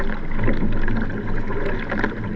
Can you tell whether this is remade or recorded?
recorded